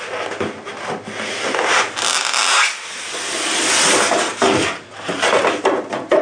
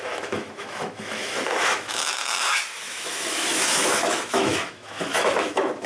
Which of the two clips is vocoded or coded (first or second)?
second